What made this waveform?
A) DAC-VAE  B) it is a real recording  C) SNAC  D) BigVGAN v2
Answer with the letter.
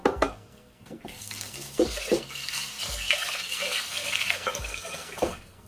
C